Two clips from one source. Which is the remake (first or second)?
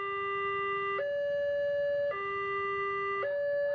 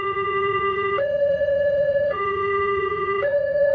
second